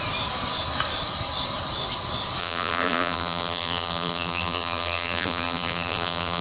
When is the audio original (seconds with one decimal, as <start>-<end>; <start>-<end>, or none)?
0.0-2.4